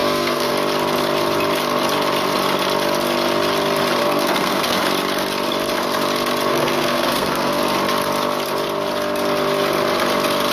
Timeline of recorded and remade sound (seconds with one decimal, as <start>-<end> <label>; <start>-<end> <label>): 0.0-0.5 remade; 0.5-4.0 recorded; 4.0-4.8 remade; 4.8-6.5 recorded; 6.5-7.6 remade; 7.6-10.5 recorded